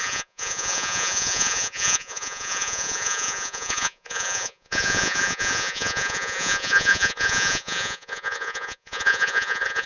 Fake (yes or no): yes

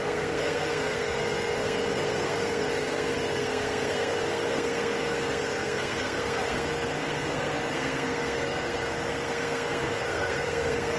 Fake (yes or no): yes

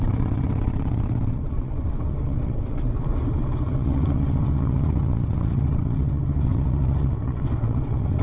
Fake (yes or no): yes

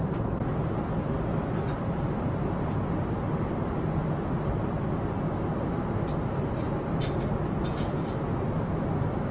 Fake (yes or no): no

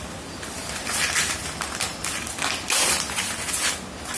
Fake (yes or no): no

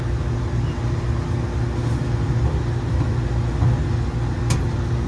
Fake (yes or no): no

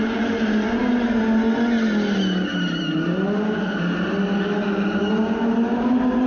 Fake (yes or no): no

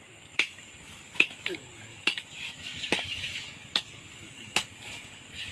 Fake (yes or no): yes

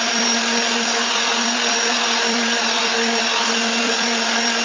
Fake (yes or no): yes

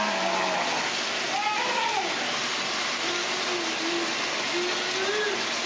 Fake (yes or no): no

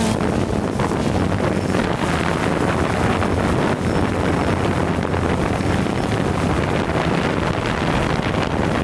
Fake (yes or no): no